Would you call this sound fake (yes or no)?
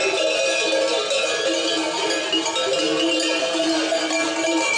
no